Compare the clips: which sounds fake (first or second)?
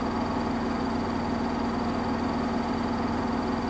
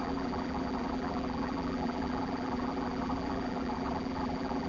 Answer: second